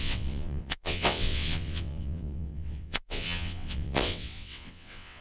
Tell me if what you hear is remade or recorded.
remade